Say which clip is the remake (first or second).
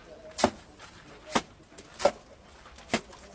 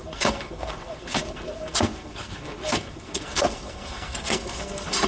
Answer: second